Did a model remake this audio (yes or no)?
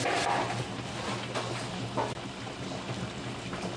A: no